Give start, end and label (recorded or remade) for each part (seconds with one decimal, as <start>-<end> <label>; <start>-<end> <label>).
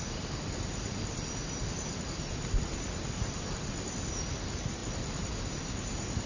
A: 0.0-6.3 recorded